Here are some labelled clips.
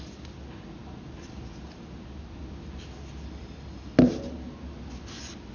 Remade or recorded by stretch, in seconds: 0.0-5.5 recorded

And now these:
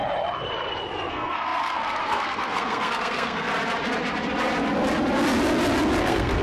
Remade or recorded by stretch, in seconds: 0.0-1.1 recorded; 1.1-3.5 remade; 3.5-6.0 recorded; 6.0-6.4 remade

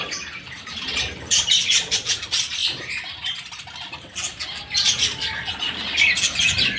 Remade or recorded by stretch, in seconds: 0.0-6.8 recorded